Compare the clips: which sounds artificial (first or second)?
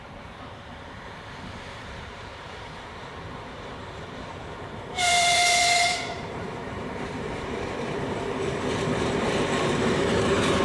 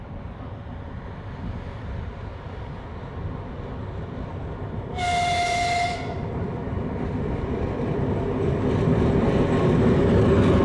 first